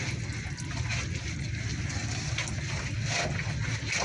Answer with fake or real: real